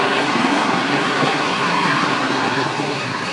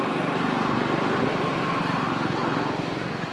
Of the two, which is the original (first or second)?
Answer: second